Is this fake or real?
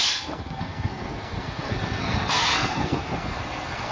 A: fake